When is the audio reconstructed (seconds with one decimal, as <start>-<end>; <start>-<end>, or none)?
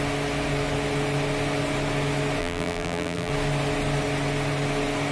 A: 2.4-3.3